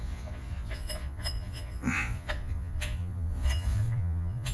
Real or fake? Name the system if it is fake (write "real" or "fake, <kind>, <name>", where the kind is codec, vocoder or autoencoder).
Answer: fake, vocoder, Vocos